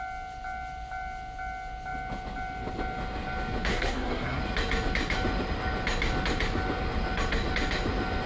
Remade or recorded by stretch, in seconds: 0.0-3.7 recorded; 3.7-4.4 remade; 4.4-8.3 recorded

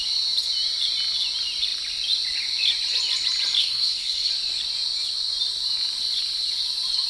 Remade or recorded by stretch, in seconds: 0.0-3.6 recorded; 3.6-4.3 remade; 4.3-7.1 recorded

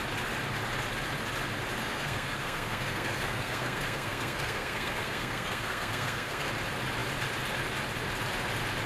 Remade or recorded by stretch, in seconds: 0.0-1.8 recorded; 1.8-6.5 remade; 6.5-8.9 recorded

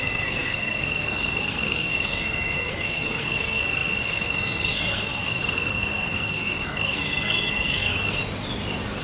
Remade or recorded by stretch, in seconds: 0.0-8.2 remade; 8.2-9.0 recorded